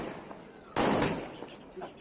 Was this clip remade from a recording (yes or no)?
no